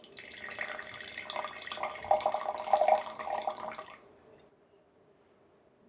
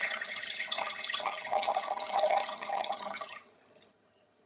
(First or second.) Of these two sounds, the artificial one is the second